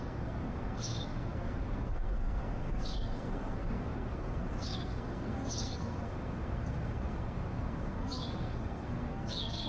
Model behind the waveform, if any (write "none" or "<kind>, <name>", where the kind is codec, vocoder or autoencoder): codec, SNAC